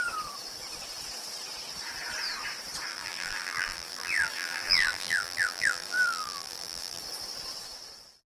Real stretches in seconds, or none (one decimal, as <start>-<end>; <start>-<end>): 0.0-2.9; 7.0-8.3

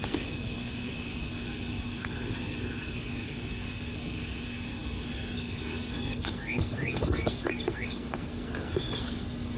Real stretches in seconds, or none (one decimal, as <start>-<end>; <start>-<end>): none

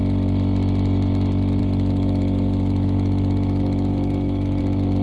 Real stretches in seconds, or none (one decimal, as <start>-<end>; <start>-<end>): 0.0-1.6; 4.6-5.0

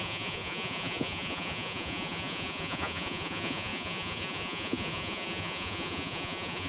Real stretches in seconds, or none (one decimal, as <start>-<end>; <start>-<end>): none